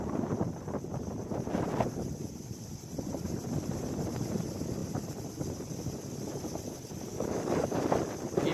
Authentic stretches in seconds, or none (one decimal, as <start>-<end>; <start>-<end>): 0.0-7.1; 7.8-8.5